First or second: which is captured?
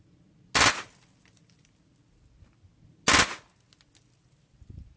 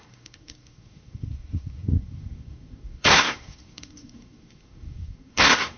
first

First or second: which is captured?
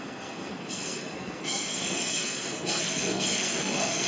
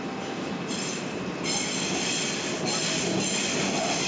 second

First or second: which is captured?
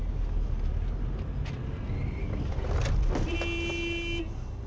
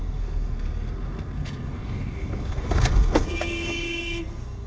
first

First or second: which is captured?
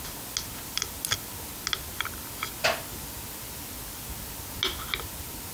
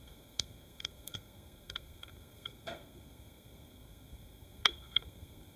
first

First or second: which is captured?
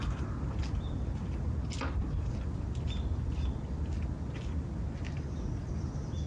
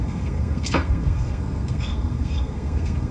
first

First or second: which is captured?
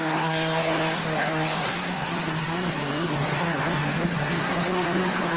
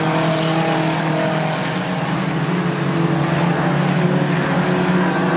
second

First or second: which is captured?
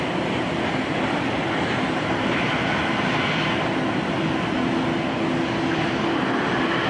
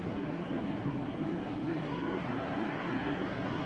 first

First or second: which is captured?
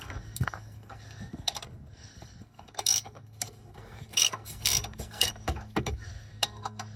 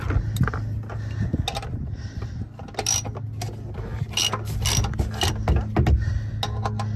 second